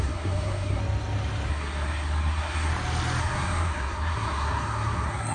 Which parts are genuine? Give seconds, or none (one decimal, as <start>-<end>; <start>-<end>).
0.8-1.5; 2.7-3.2